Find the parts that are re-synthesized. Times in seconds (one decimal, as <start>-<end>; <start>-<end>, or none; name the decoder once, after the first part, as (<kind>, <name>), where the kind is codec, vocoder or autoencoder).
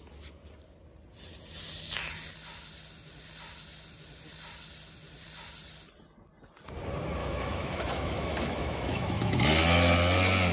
7.2-9.4 (autoencoder, DAC-VAE)